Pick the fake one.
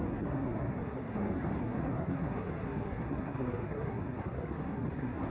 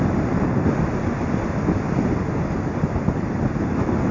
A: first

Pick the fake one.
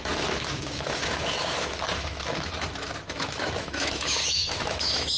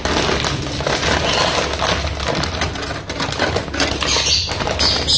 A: first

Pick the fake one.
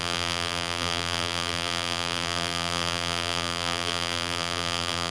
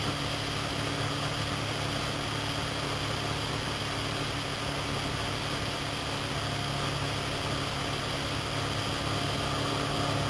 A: first